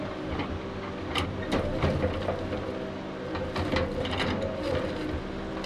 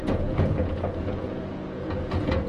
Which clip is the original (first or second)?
first